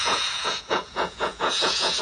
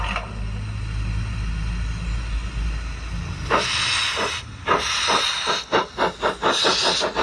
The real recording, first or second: second